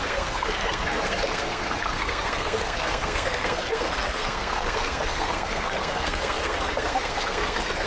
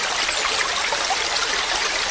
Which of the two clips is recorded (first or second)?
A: second